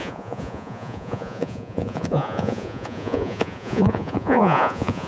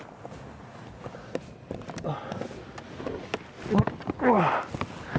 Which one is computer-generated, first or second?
first